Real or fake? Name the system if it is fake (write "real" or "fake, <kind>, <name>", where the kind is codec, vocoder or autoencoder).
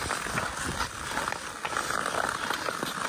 real